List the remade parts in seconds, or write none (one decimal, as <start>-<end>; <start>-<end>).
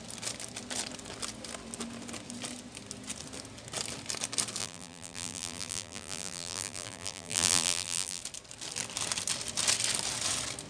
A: 4.6-8.2